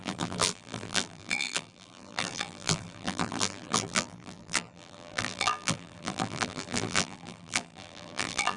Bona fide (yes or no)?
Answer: no